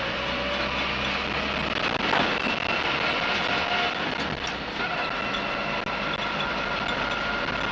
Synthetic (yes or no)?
no